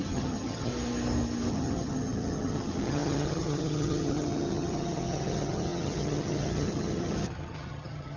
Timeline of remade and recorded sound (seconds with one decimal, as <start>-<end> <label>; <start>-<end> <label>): 0.0-0.7 remade; 0.7-1.5 recorded; 1.5-8.2 remade